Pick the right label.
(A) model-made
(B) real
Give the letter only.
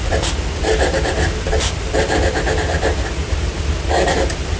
B